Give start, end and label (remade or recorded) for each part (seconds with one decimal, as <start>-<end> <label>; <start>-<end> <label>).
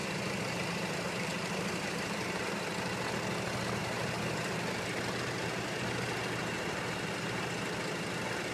0.0-2.5 remade; 2.5-3.8 recorded; 3.8-7.4 remade; 7.4-8.5 recorded